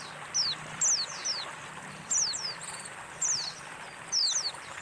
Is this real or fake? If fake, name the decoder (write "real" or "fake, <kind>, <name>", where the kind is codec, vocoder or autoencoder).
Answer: real